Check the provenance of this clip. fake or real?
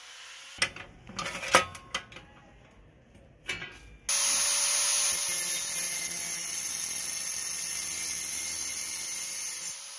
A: real